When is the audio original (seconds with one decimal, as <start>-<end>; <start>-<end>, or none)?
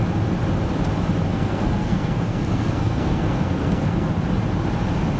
0.0-1.3; 4.1-5.2